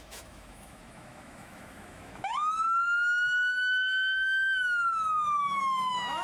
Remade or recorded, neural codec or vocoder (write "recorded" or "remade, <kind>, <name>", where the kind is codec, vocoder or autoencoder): remade, autoencoder, DAC-VAE